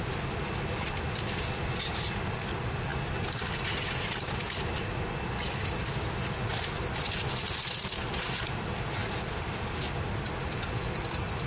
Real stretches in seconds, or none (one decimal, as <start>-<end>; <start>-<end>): 0.0-11.5